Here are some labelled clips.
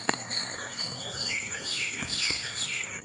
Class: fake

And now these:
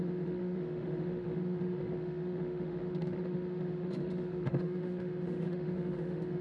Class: fake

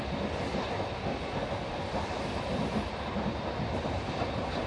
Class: fake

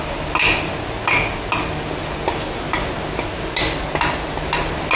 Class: real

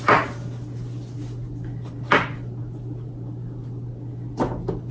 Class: real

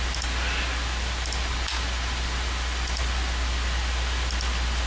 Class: real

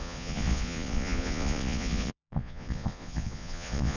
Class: fake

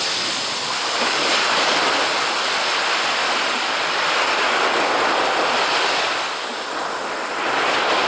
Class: real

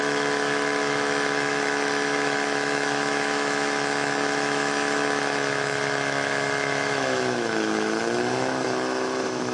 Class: fake